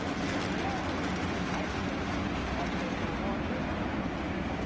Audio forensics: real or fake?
real